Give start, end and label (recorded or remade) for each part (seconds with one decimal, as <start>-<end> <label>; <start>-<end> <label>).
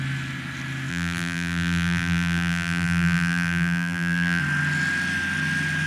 0.0-0.9 recorded; 0.9-4.4 remade; 4.4-5.9 recorded